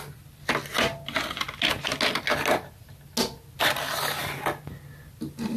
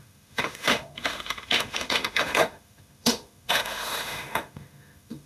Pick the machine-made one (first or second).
second